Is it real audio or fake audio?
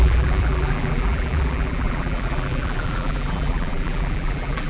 fake